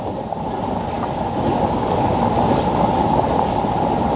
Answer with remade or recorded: recorded